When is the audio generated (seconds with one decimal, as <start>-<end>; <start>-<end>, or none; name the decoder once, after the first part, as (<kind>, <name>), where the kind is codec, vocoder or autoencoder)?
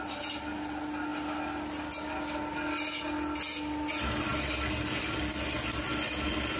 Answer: none